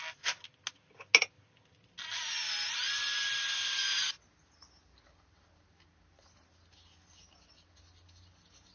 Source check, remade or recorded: recorded